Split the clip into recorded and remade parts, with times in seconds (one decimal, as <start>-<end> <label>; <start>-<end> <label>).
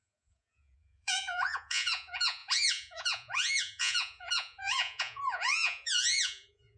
0.0-6.8 remade